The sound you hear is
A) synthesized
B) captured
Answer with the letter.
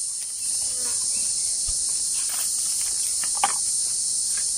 B